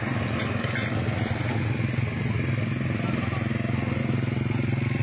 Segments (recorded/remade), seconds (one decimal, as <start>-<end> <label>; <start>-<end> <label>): 0.0-5.0 recorded